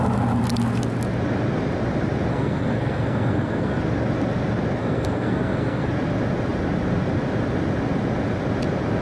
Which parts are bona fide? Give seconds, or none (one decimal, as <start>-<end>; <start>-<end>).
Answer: 0.0-2.3; 3.8-4.8; 5.9-9.0